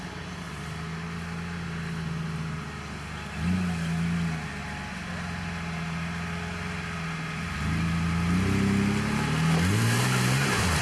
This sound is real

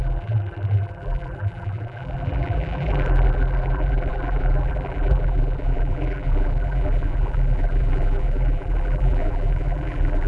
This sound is fake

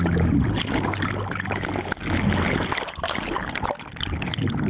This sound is real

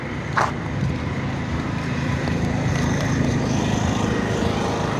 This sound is fake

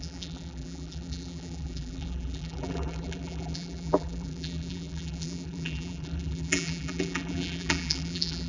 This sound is fake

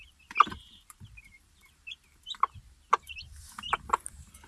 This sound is fake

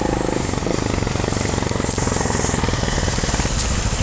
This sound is real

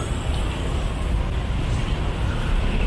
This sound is fake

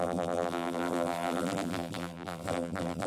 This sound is fake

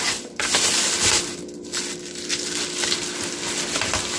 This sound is real